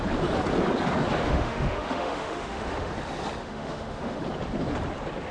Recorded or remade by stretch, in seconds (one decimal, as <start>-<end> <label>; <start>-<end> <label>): 0.0-1.2 recorded; 1.2-2.9 remade; 2.9-3.4 recorded; 3.4-4.2 remade; 4.2-5.3 recorded